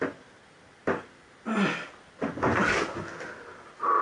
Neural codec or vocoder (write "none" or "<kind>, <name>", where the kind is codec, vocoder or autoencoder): none